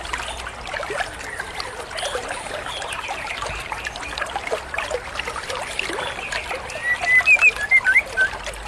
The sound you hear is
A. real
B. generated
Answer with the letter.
A